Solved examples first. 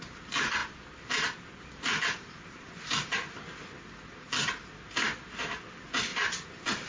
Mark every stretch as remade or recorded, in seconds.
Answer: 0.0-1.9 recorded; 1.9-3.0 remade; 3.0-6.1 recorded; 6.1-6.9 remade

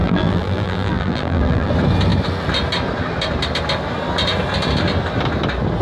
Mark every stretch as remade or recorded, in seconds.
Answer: 0.0-1.7 remade; 1.7-5.8 recorded

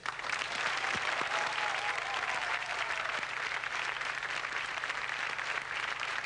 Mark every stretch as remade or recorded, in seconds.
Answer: 0.0-6.3 remade